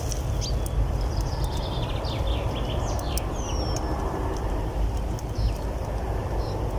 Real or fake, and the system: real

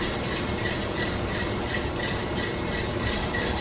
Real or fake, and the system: fake, vocoder, BigVGAN v2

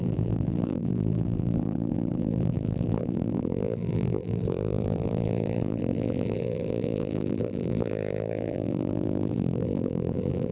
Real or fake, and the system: fake, vocoder, BigVGAN v2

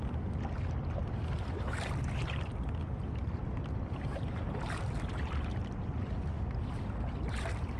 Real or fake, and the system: real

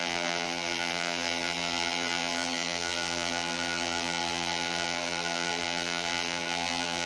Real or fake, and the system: fake, vocoder, BigVGAN v2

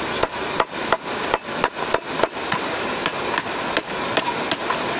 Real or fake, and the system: real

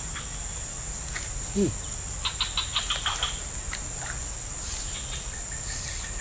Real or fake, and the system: real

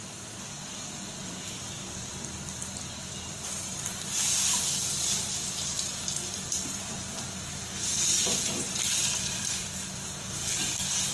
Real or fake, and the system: fake, vocoder, BigVGAN v2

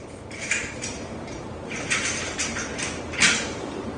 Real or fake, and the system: fake, vocoder, BigVGAN v2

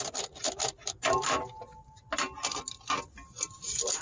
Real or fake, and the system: real